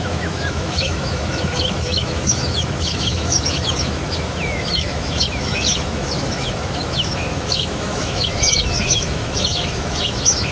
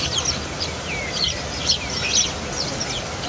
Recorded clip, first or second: second